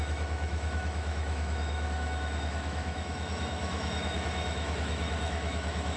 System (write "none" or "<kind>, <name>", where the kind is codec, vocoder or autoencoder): autoencoder, DAC-VAE